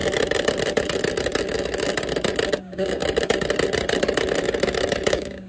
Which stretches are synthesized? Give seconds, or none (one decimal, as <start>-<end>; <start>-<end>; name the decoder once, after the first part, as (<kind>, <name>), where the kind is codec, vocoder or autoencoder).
2.6-3.0 (codec, DAC); 5.1-5.5